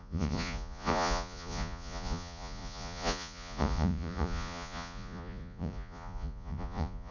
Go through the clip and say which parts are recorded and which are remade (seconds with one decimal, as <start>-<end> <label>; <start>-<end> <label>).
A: 0.0-7.1 remade